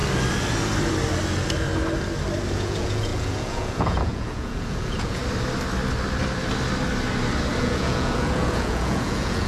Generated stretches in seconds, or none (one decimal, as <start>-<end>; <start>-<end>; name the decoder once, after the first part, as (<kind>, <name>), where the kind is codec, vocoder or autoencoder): 2.5-5.2 (vocoder, Vocos); 7.6-9.5